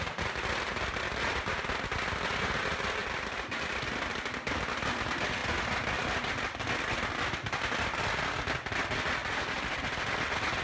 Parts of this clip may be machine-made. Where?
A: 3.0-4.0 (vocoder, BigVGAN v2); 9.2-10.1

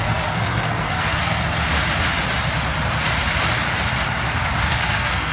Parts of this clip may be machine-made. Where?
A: 0.0-1.4 (codec, SNAC); 4.6-5.3

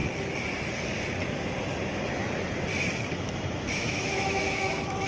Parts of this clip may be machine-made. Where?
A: 3.1-5.1 (autoencoder, DAC-VAE)

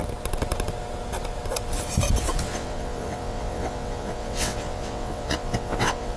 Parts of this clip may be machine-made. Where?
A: 2.4-6.2 (vocoder, WaveNeXt)

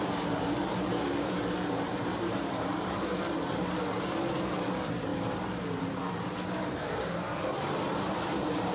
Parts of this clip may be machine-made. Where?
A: 0.0-8.7 (vocoder, BigVGAN v2)

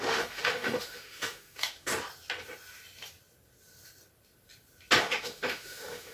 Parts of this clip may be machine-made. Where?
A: 0.0-1.9 (autoencoder, DAC-VAE); 5.0-6.1

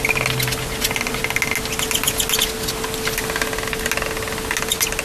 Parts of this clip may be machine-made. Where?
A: none